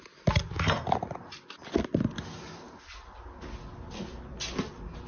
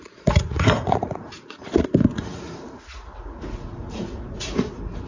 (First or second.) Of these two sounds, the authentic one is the first